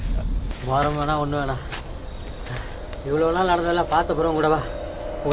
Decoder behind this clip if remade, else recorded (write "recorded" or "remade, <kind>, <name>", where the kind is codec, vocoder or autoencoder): recorded